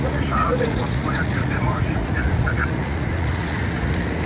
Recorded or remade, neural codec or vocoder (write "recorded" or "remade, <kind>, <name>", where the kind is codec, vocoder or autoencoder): remade, vocoder, Vocos